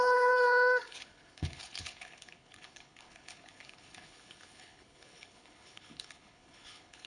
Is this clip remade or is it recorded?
remade